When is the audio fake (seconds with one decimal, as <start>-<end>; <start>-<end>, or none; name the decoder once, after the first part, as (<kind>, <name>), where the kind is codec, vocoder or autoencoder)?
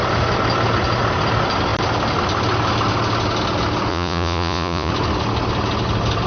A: 3.9-4.9 (vocoder, Vocos)